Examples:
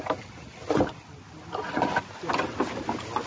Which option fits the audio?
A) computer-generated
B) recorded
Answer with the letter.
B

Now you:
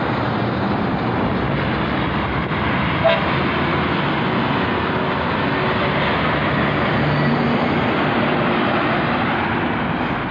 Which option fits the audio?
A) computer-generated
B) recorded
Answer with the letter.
B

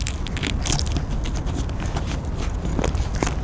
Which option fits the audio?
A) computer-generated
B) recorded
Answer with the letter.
B